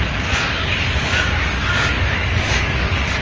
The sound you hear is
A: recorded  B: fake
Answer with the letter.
B